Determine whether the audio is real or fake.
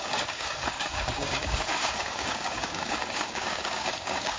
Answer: fake